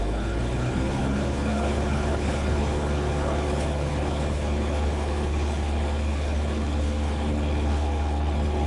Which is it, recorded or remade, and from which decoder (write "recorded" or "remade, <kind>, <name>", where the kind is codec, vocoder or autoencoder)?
remade, codec, HILCodec